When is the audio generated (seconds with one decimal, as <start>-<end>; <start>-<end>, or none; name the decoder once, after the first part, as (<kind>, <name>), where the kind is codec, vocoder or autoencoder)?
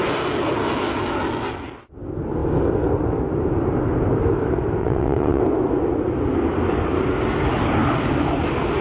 4.8-5.4 (vocoder, WaveNeXt)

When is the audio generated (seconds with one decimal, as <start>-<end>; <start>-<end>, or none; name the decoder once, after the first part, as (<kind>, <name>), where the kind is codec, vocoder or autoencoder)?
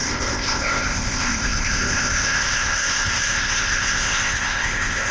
0.0-5.1 (codec, ZipCodec)